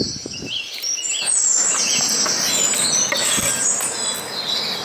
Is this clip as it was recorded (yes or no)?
yes